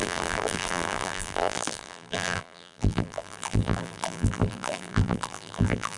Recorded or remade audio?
remade